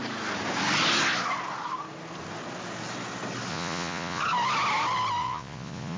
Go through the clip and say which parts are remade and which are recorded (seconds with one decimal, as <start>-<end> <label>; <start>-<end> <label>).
0.0-3.5 recorded; 3.5-4.2 remade; 4.2-5.2 recorded; 5.2-6.0 remade